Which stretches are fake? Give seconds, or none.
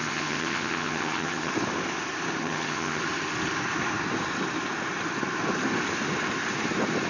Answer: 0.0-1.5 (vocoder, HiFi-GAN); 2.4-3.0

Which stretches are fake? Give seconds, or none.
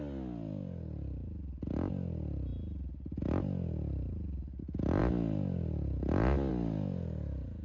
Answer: none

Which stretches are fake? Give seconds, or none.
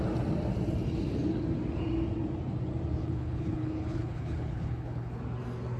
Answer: 3.0-5.2 (codec, HILCodec)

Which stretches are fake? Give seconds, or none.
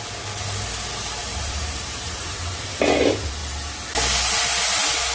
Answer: 1.2-2.8 (vocoder, BigVGAN v2)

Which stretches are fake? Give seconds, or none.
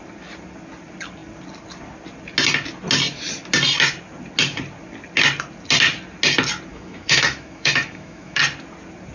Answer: 6.7-8.4 (autoencoder, DAC-VAE)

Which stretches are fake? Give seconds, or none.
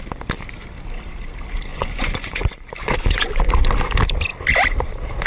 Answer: 1.7-3.3 (vocoder, Vocos)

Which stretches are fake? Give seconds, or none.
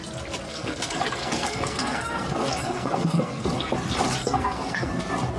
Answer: 0.5-3.7 (codec, SNAC); 4.2-4.9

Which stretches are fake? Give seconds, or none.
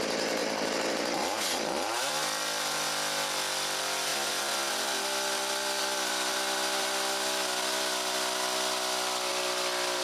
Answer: none